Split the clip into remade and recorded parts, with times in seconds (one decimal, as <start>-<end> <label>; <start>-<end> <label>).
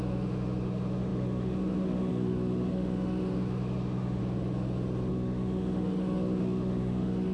0.0-4.2 remade; 4.2-5.1 recorded; 5.1-7.3 remade